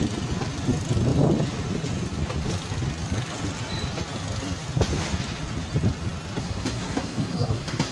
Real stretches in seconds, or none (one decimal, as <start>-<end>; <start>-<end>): 0.0-6.4